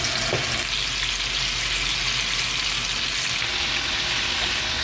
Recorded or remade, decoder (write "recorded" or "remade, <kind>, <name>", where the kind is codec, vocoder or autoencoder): recorded